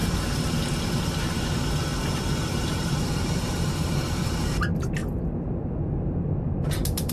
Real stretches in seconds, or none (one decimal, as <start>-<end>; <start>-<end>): 0.0-2.4; 5.0-7.1